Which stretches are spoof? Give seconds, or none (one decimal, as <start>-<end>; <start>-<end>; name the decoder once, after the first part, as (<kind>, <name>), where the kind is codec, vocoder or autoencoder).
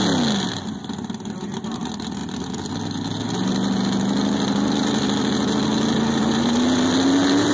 none